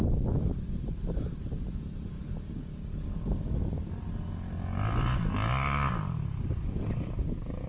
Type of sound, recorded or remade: recorded